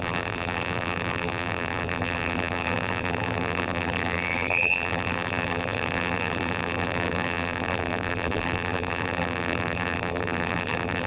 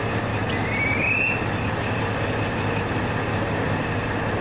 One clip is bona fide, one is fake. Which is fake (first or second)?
first